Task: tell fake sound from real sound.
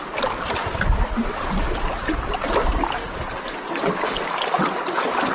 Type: real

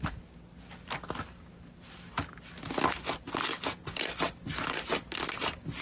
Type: real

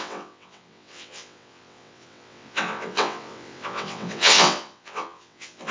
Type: fake